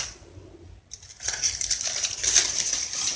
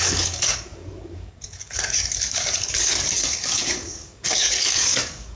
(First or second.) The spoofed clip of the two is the second